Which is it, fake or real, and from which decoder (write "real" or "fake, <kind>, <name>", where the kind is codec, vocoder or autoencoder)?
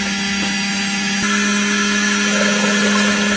real